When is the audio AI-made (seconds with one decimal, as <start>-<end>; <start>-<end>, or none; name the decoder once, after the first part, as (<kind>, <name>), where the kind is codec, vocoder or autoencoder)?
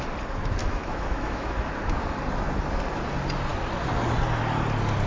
0.6-1.7 (autoencoder, DAC-VAE)